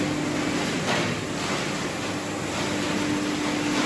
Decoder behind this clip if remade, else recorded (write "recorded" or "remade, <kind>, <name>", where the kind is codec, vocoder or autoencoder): recorded